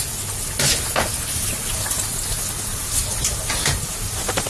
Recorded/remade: recorded